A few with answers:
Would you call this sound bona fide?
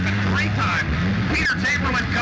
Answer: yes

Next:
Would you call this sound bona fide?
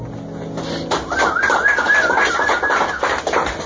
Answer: yes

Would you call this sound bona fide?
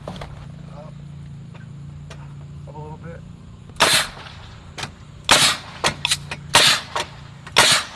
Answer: yes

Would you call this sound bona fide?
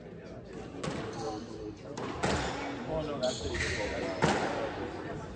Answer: yes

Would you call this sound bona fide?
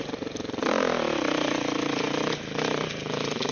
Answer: yes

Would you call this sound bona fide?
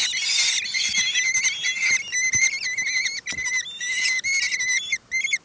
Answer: yes